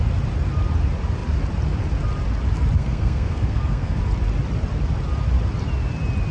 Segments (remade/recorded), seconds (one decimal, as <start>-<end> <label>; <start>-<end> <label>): 0.0-2.8 recorded; 2.8-4.0 remade; 4.0-6.3 recorded